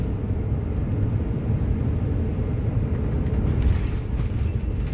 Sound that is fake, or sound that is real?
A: real